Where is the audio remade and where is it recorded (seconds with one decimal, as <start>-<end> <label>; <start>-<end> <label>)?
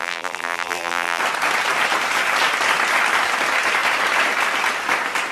0.0-1.2 remade; 1.2-5.3 recorded